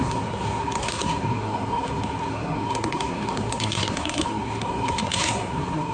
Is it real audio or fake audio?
fake